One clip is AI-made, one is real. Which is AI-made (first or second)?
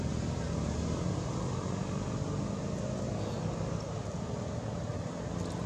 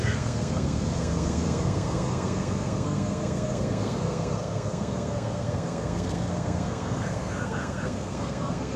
second